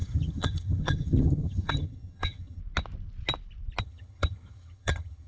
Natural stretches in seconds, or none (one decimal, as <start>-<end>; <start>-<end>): 2.6-3.8